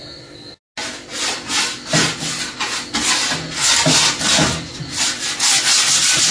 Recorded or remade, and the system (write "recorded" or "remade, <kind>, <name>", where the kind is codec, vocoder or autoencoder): recorded